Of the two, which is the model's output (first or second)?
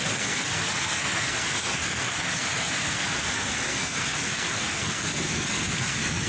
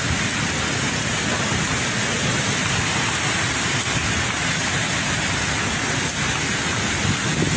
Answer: first